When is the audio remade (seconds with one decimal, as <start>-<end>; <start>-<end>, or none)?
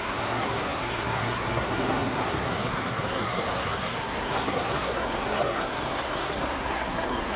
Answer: 0.0-7.4